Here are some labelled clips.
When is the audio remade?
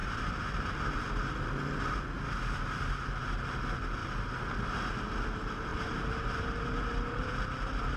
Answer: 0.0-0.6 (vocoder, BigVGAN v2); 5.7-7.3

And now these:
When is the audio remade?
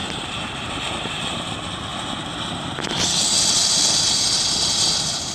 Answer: 0.0-1.4 (vocoder, BigVGAN v2)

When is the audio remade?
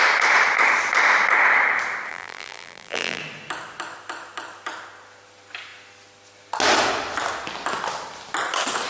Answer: 2.1-3.2 (vocoder, BigVGAN v2)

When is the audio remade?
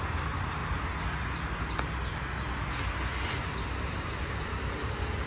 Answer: 0.0-0.6 (vocoder, BigVGAN v2); 3.8-5.3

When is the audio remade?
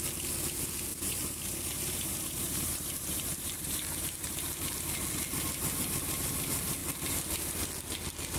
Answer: 0.9-4.7 (vocoder, BigVGAN v2)